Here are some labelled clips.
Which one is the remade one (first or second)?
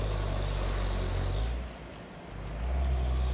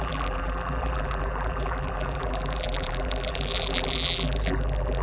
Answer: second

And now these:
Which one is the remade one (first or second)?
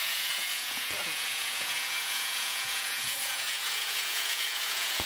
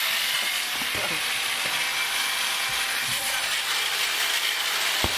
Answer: first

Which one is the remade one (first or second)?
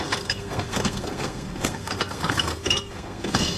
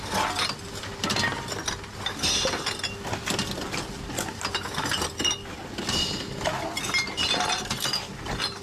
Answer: first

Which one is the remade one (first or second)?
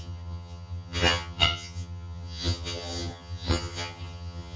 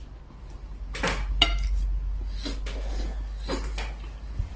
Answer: first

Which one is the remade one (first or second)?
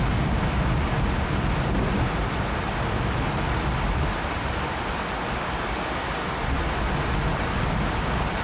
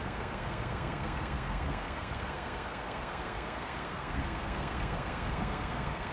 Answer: second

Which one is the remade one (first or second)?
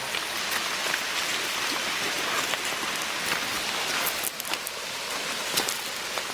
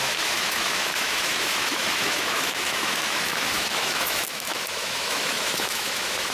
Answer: second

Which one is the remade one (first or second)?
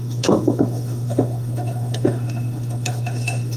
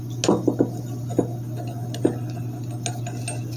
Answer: first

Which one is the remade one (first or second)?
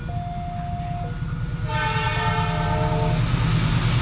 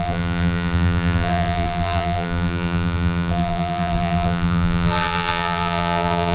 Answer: second